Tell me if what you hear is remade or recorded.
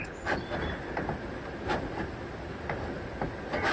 recorded